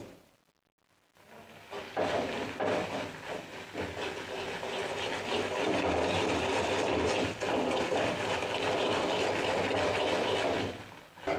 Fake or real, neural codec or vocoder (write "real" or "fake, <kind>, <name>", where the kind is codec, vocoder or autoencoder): real